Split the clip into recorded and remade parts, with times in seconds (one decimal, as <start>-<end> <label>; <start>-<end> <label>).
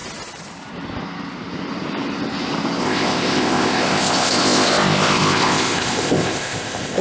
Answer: 0.0-2.8 recorded; 2.8-7.0 remade